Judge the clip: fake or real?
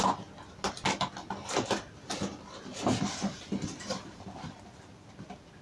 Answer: real